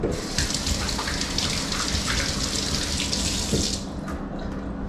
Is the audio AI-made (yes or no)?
no